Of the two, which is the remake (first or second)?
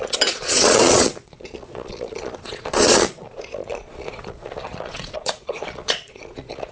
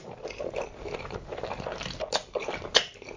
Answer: first